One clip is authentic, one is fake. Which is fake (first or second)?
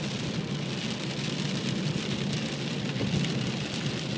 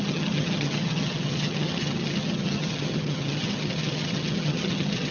second